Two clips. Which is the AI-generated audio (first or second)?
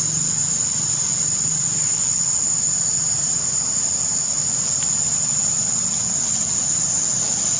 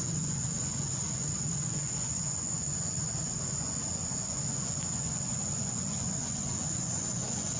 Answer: second